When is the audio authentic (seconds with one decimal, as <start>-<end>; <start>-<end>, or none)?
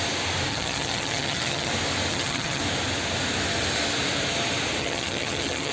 0.0-0.5; 1.7-2.1; 2.6-4.8